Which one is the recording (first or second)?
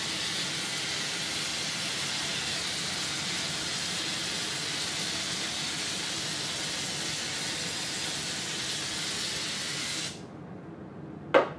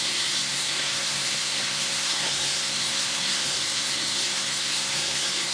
first